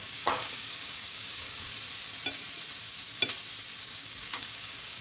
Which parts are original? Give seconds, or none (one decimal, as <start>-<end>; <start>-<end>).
1.7-3.8